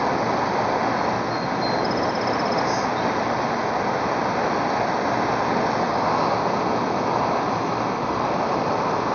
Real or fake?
real